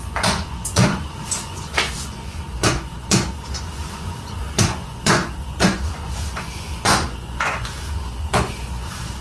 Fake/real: fake